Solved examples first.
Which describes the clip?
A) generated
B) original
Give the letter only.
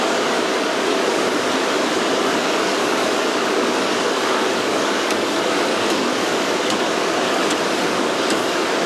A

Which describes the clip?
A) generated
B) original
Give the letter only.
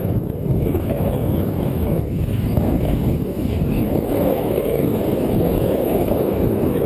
A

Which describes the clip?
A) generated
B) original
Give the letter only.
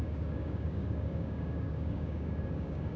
A